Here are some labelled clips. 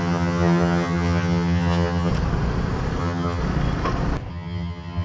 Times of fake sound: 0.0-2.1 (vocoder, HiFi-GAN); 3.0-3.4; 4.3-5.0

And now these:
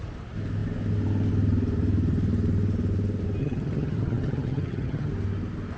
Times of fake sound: 3.4-5.1 (vocoder, HiFi-GAN)